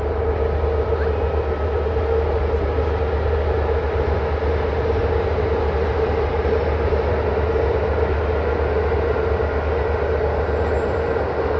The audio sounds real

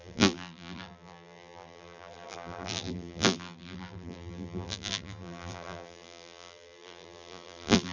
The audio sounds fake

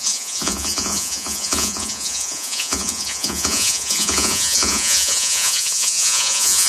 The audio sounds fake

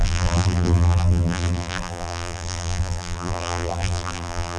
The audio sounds fake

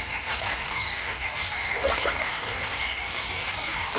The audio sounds fake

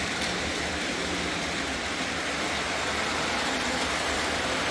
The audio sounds real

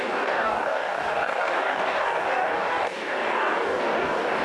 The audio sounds fake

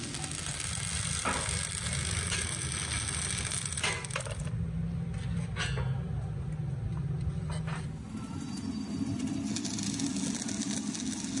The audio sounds real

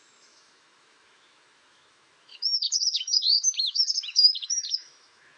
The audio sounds fake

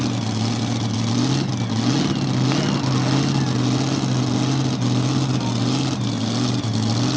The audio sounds real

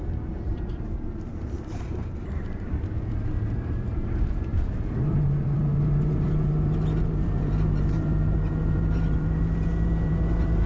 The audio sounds fake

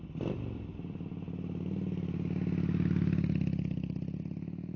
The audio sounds real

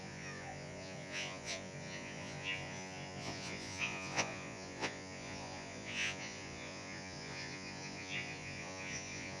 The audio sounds fake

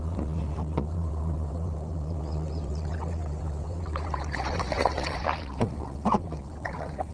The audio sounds fake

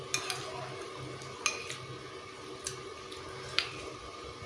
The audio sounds real